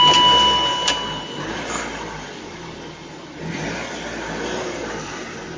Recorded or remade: recorded